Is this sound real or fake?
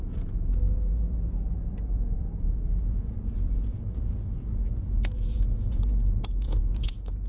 fake